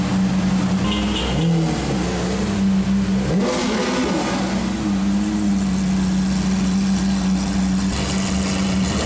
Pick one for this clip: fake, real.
real